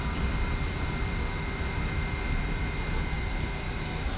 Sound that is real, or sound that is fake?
real